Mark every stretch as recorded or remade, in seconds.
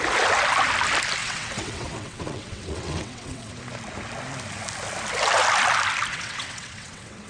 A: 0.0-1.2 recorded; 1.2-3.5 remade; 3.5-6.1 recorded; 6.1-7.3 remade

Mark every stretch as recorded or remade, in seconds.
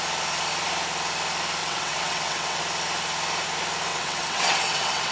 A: 0.0-1.6 recorded; 1.6-2.6 remade; 2.6-3.9 recorded; 3.9-5.1 remade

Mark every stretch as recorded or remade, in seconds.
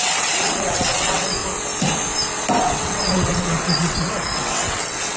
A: 0.0-1.4 remade; 1.4-2.6 recorded; 2.6-5.2 remade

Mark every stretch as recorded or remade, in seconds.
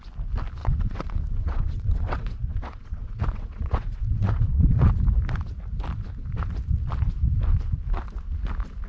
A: 0.0-0.6 recorded; 0.6-4.9 remade; 4.9-8.9 recorded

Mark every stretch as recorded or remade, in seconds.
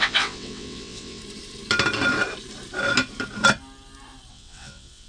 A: 0.0-1.2 remade; 1.2-4.3 recorded; 4.3-5.1 remade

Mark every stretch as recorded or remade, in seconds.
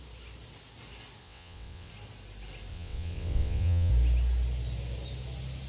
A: 0.0-1.2 recorded; 1.2-1.9 remade; 1.9-2.7 recorded; 2.7-3.9 remade; 3.9-5.7 recorded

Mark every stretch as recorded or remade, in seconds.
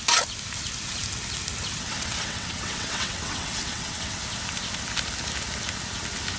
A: 0.0-1.7 recorded; 1.7-4.2 remade; 4.2-6.4 recorded